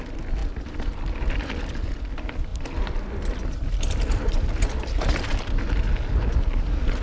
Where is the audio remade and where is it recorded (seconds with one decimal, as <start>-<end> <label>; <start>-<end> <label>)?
0.0-0.4 recorded; 0.4-1.0 remade; 1.0-2.5 recorded; 2.5-5.6 remade; 5.6-7.0 recorded